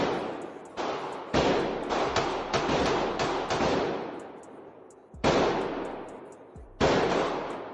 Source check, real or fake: real